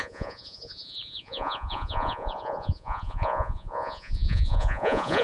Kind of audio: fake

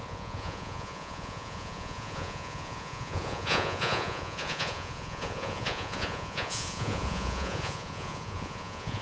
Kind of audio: fake